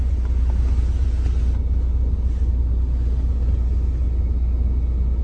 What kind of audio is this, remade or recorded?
recorded